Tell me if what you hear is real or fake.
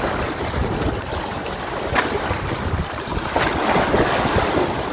real